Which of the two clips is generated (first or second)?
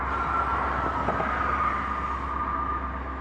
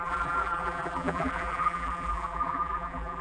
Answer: second